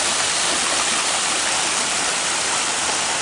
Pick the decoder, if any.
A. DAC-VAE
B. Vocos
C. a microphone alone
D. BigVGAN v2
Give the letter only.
C